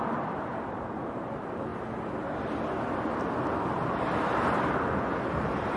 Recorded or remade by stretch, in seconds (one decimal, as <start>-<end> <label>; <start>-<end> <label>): 0.0-1.7 remade; 1.7-5.2 recorded; 5.2-5.8 remade